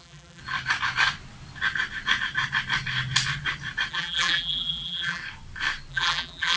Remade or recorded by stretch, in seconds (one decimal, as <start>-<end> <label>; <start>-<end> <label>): 0.0-0.4 remade; 0.4-3.9 recorded; 3.9-5.2 remade; 5.2-5.9 recorded; 5.9-6.6 remade